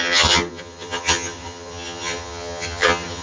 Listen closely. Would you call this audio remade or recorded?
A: remade